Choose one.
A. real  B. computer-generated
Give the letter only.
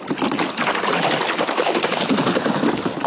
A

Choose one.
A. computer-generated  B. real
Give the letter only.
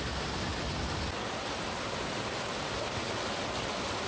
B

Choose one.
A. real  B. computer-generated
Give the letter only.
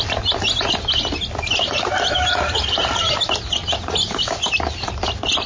A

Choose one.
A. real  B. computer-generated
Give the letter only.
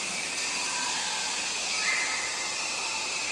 A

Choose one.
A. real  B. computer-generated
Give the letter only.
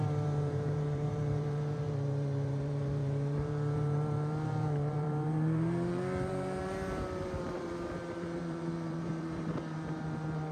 B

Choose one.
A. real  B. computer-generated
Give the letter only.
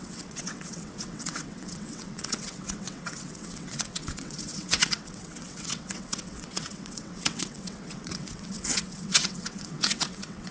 B